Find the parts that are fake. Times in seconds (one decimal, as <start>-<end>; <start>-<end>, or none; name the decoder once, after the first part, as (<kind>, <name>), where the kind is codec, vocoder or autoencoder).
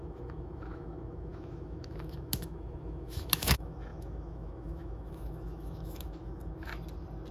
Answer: 0.0-6.7 (autoencoder, DAC-VAE)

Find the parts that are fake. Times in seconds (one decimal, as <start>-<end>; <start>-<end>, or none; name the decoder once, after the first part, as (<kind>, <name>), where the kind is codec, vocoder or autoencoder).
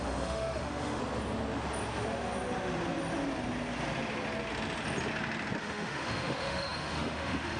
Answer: 0.0-1.0 (autoencoder, DAC-VAE); 5.6-7.6